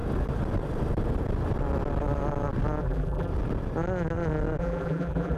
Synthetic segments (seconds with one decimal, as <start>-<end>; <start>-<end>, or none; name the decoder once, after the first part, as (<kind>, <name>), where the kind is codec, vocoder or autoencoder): 2.8-3.3 (vocoder, BigVGAN v2); 4.6-5.4